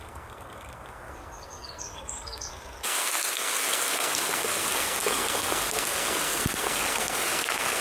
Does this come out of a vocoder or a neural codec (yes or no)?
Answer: yes